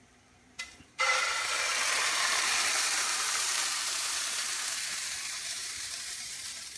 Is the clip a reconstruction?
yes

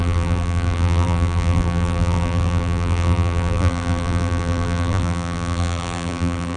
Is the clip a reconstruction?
yes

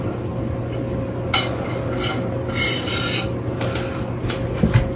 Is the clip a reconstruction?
no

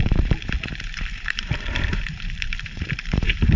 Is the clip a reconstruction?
yes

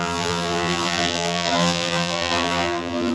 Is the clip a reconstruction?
yes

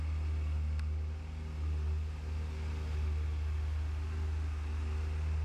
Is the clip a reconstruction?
no